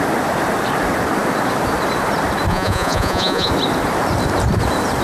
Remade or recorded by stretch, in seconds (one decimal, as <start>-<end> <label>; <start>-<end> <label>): 0.0-2.5 recorded; 2.5-3.5 remade; 3.5-5.0 recorded